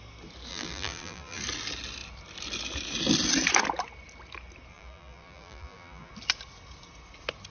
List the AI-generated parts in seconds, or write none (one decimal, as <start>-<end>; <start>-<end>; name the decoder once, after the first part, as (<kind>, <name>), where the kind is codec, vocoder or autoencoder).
0.5-1.4 (vocoder, BigVGAN v2); 4.7-6.1

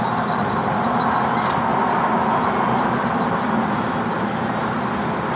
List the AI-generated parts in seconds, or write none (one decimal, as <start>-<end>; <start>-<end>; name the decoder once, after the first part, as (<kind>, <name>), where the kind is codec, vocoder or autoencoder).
none